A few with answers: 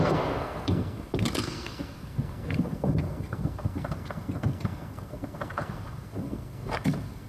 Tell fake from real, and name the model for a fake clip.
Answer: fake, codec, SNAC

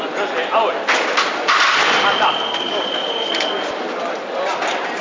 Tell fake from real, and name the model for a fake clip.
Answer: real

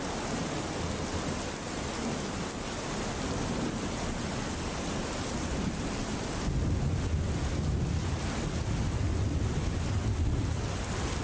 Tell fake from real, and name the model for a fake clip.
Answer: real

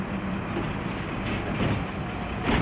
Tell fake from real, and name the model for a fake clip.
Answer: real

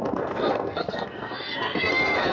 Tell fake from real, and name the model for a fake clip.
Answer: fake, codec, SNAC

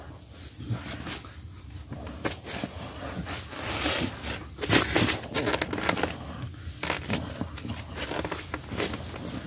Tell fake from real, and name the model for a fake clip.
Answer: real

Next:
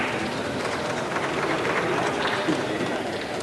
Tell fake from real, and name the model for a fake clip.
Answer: real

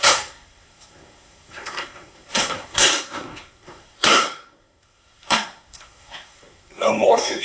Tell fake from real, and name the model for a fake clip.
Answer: fake, codec, SNAC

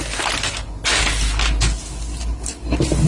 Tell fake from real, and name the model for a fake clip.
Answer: real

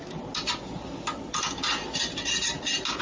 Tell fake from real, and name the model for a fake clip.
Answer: real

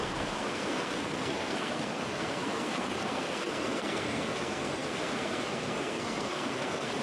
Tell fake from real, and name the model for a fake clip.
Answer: fake, codec, SNAC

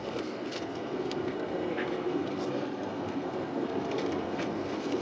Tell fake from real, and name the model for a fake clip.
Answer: fake, codec, SNAC